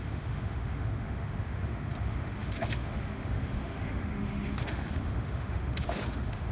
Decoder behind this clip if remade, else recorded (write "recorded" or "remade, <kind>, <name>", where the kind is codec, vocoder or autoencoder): remade, autoencoder, DAC-VAE